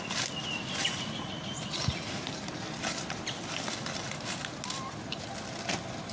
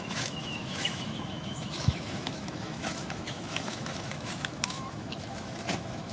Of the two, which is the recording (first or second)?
first